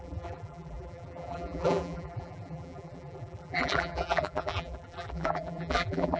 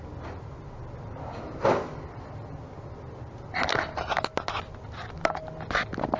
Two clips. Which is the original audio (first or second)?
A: second